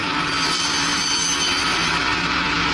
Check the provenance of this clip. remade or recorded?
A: recorded